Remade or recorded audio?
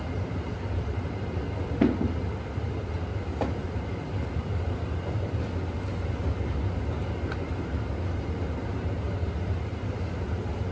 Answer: recorded